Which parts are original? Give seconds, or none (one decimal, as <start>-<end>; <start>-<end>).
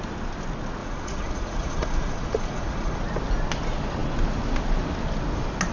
0.0-0.8; 3.0-5.7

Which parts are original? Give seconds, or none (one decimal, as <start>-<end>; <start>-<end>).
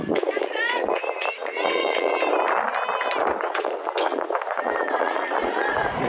2.1-3.4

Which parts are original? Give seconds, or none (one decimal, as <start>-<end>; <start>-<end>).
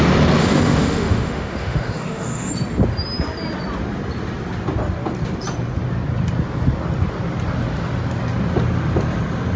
0.0-0.4; 2.5-9.6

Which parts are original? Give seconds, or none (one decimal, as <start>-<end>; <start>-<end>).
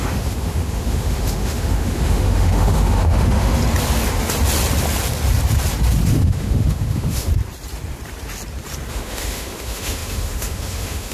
3.6-6.1; 7.3-8.9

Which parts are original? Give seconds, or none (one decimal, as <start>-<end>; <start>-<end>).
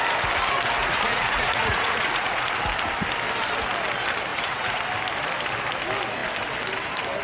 0.0-0.8; 2.5-4.3; 4.8-7.2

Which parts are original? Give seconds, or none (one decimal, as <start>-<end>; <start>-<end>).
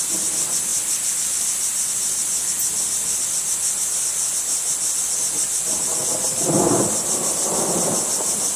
0.0-0.7; 1.8-8.6